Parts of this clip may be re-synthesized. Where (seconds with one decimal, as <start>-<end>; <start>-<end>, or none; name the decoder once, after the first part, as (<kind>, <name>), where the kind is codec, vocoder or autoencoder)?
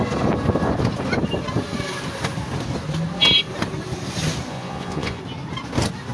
4.5-5.2 (vocoder, Vocos)